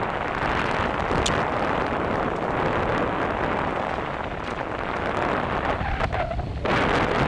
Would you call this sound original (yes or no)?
yes